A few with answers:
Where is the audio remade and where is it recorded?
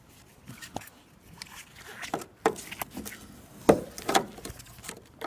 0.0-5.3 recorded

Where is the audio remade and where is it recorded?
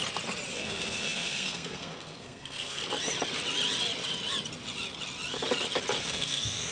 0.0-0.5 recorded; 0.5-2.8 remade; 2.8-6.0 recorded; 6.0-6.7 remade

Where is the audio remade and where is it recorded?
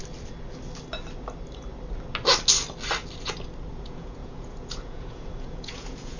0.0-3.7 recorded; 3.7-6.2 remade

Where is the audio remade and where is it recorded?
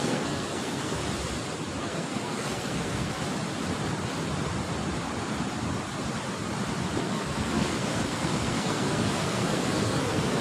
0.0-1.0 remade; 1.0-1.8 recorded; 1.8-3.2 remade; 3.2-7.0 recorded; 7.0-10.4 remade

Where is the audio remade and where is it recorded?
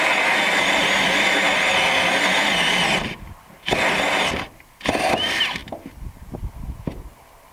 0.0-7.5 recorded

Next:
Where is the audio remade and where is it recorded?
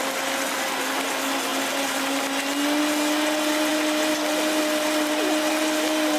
0.0-6.2 recorded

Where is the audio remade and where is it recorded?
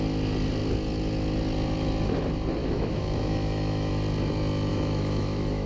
0.0-2.6 recorded; 2.6-3.9 remade; 3.9-4.7 recorded; 4.7-5.7 remade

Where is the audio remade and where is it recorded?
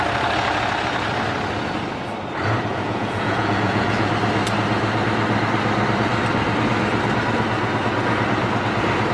0.0-2.7 recorded; 2.7-4.1 remade; 4.1-9.1 recorded